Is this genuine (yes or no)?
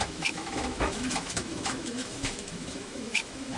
no